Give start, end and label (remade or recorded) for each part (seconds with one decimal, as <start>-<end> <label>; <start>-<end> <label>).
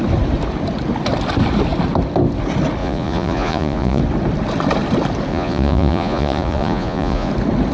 0.0-2.8 recorded; 2.8-4.0 remade; 4.0-5.3 recorded; 5.3-7.3 remade; 7.3-7.7 recorded